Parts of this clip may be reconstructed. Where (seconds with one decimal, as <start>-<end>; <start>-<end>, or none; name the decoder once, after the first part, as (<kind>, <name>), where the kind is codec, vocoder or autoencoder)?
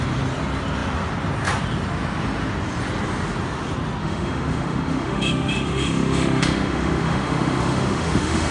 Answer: 4.0-8.5 (autoencoder, DAC-VAE)